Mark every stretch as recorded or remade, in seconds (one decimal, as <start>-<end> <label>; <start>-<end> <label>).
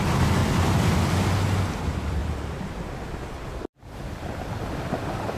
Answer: 0.0-0.4 remade; 0.4-1.7 recorded; 1.7-2.2 remade; 2.2-4.1 recorded; 4.1-5.4 remade